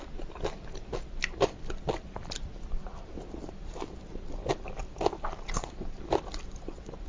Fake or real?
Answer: real